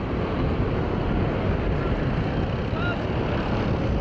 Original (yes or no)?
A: yes